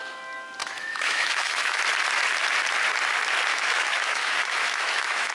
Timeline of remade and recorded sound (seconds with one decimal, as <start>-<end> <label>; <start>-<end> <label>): 0.0-0.6 recorded; 0.6-1.8 remade; 1.8-3.5 recorded; 3.5-5.3 remade